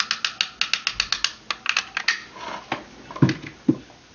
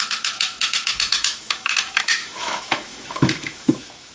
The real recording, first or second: first